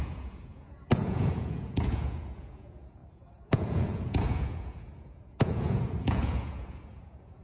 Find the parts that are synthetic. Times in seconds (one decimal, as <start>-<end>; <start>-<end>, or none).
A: 0.0-7.4